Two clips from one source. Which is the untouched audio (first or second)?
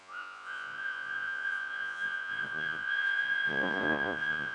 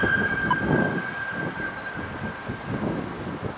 second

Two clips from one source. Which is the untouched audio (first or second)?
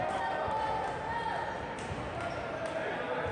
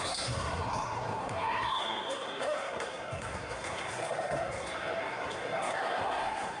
first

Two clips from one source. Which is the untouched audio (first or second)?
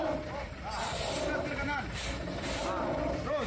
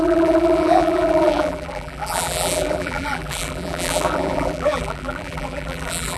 first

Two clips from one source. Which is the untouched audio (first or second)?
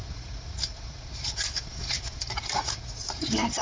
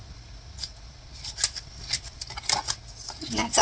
second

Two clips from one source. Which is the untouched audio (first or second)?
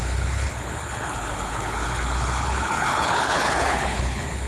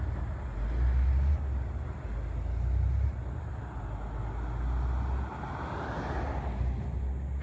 second